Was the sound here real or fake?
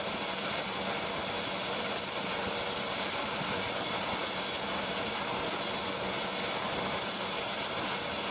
real